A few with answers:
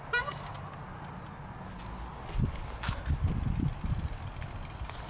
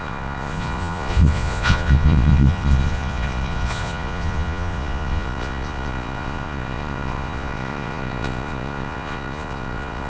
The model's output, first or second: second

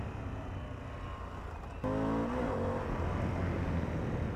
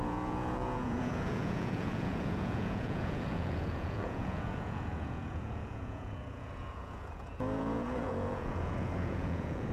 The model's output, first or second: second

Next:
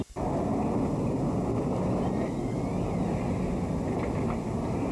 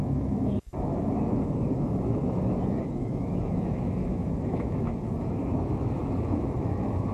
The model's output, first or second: second